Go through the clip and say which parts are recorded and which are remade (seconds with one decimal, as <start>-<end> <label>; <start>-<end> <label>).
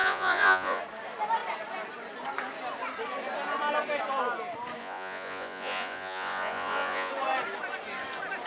0.0-0.8 remade; 0.8-4.8 recorded; 4.8-7.1 remade; 7.1-8.5 recorded